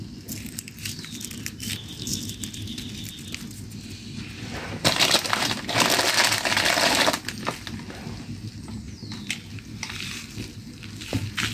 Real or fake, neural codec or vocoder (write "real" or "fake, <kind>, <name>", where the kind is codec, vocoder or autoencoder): real